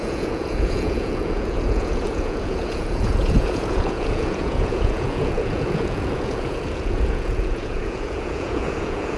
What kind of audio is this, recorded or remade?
remade